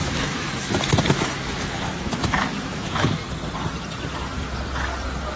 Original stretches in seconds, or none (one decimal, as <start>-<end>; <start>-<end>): 3.2-5.4